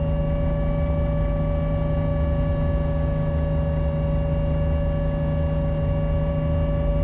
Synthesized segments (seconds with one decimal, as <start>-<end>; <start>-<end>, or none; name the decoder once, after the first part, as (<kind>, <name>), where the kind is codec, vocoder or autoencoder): none